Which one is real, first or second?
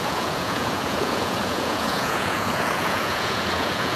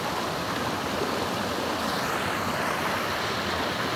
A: second